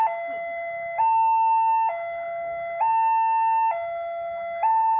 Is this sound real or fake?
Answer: real